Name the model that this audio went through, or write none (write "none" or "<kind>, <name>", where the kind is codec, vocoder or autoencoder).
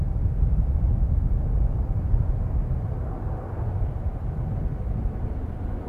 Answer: none